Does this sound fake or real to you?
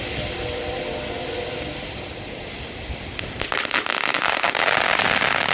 real